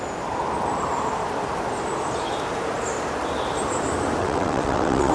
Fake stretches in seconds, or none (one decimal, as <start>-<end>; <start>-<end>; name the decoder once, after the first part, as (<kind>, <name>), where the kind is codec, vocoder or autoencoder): 4.2-5.1 (vocoder, WaveNeXt)